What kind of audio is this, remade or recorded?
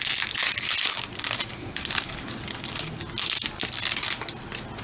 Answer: recorded